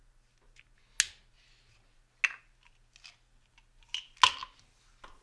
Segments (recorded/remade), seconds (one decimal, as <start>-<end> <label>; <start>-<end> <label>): 0.0-5.2 recorded